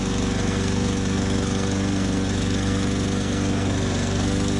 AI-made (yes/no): yes